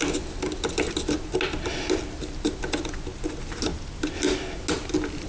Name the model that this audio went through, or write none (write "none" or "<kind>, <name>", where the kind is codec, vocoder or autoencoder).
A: none